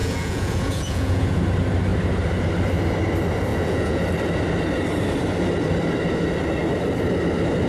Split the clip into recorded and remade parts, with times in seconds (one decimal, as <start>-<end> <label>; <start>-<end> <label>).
0.0-1.4 remade; 1.4-3.5 recorded; 3.5-4.0 remade; 4.0-7.7 recorded